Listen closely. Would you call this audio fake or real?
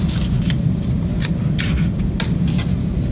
real